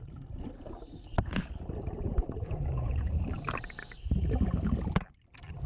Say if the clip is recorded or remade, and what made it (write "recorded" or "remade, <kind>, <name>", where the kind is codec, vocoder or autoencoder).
recorded